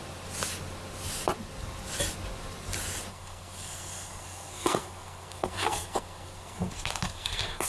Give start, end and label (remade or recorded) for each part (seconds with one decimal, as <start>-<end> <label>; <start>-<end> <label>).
0.0-3.1 recorded; 3.1-7.7 remade